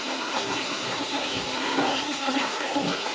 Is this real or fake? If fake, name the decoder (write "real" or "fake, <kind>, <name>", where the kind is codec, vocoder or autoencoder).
fake, codec, SNAC